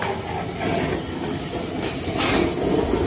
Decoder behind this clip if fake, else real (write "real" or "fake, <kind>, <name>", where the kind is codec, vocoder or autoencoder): real